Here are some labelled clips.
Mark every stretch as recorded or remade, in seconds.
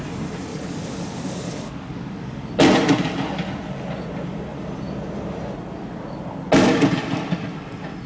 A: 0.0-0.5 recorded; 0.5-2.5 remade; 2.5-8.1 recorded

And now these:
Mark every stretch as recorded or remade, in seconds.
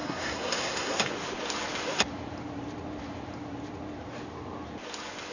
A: 0.0-1.0 remade; 1.0-5.3 recorded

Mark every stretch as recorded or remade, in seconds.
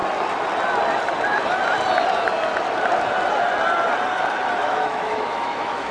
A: 0.0-4.6 recorded; 4.6-5.9 remade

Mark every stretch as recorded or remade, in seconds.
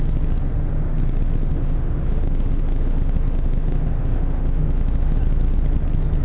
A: 0.0-1.5 recorded; 1.5-5.2 remade; 5.2-6.2 recorded